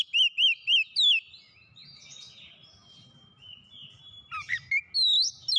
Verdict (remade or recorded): recorded